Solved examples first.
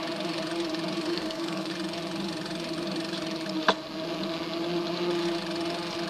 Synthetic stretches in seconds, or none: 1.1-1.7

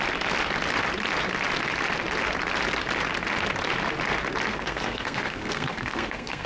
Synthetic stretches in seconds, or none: 4.5-6.5

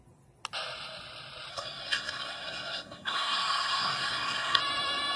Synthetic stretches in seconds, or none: 1.5-4.6

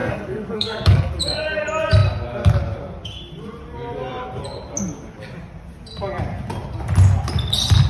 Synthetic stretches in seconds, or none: 0.0-1.1